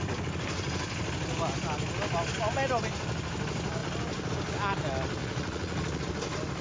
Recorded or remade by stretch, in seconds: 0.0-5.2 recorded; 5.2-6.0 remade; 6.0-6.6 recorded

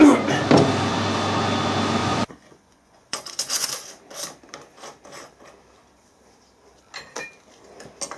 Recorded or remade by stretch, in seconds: 0.0-2.0 recorded; 2.0-3.7 remade; 3.7-8.2 recorded

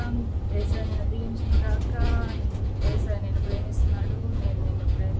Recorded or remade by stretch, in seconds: 0.0-2.9 recorded; 2.9-4.5 remade; 4.5-5.2 recorded